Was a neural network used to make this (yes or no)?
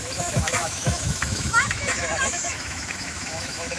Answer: yes